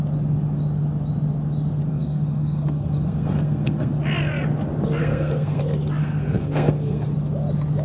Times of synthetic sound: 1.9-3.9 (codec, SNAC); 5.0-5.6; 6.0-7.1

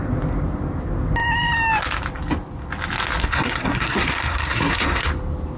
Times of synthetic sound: 3.2-5.1 (codec, SNAC)

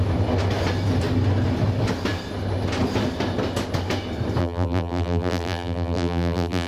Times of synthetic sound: 4.4-6.7 (vocoder, BigVGAN v2)